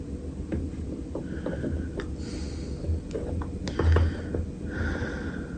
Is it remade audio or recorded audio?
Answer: recorded